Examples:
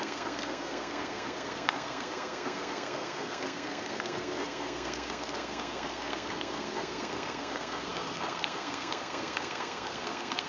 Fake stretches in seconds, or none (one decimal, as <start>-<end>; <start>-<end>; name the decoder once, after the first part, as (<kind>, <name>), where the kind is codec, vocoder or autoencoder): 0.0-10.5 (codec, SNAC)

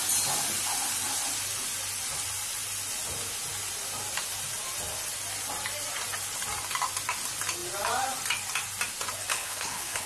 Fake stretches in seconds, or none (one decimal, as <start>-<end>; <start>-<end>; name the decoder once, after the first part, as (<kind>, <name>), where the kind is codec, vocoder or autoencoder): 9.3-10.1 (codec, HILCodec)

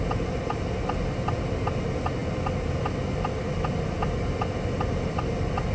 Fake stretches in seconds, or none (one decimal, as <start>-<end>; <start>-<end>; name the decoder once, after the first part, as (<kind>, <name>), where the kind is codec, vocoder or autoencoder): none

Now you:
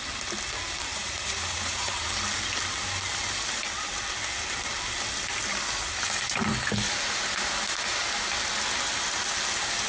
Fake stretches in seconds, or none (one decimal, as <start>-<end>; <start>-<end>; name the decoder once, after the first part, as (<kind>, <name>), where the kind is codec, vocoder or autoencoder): 0.9-2.1 (vocoder, Vocos)

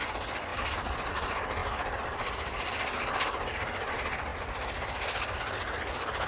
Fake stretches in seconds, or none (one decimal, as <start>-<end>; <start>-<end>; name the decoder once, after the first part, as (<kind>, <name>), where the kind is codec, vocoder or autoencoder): 0.0-0.5 (vocoder, BigVGAN v2); 1.1-4.3; 5.3-6.3

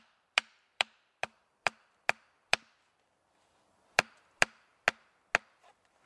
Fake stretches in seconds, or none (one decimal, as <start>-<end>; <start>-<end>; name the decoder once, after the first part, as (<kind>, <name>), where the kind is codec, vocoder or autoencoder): 0.0-4.7 (vocoder, BigVGAN v2); 5.4-6.1